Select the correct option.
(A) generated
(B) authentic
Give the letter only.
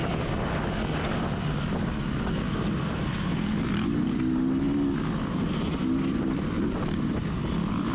B